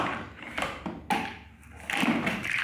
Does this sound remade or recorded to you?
recorded